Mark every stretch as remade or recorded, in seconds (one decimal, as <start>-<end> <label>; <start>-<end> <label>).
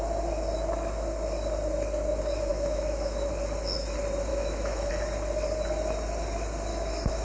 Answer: 0.0-2.5 recorded; 2.5-3.3 remade; 3.3-4.3 recorded; 4.3-4.9 remade; 4.9-6.7 recorded; 6.7-7.2 remade